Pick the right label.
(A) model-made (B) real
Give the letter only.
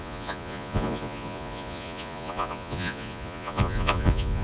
A